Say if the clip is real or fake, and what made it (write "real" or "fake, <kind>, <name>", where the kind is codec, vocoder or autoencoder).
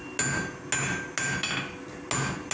real